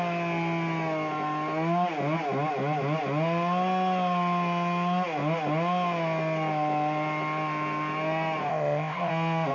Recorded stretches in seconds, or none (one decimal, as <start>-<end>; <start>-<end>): 0.0-8.5; 9.1-9.5